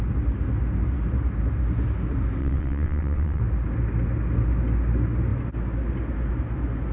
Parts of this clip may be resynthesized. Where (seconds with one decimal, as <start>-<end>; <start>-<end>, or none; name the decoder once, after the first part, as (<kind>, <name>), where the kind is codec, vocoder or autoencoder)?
2.4-3.4 (vocoder, WaveNeXt)